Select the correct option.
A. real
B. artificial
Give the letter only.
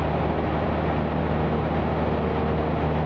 A